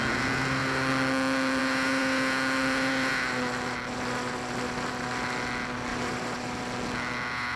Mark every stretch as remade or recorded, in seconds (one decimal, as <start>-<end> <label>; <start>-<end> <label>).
0.0-5.9 recorded; 5.9-6.5 remade; 6.5-7.6 recorded